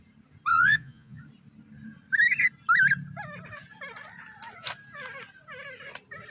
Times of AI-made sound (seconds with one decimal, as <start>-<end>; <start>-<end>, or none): 0.5-1.2